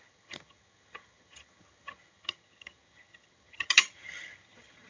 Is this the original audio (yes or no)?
no